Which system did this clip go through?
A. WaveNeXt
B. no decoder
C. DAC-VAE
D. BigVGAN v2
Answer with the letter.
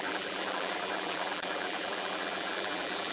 D